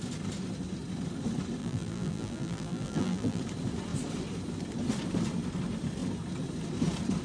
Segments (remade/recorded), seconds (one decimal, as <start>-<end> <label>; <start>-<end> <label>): 0.0-1.6 recorded; 1.6-3.4 remade; 3.4-7.2 recorded